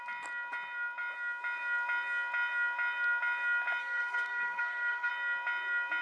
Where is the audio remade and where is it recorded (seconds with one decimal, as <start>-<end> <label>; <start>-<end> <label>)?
0.0-3.8 recorded; 3.8-5.1 remade; 5.1-6.0 recorded